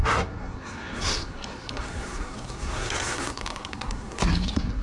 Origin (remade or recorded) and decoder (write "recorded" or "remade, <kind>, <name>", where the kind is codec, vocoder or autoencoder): remade, codec, SNAC